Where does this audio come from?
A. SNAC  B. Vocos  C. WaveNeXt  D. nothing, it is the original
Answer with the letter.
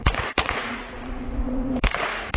B